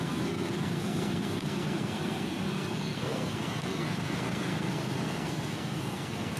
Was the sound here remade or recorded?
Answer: remade